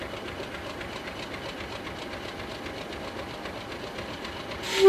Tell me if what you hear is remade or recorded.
recorded